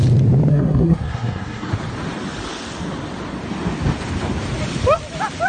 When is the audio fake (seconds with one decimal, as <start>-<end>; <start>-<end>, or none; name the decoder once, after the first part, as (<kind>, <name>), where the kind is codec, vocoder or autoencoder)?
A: 0.5-1.7 (codec, SNAC)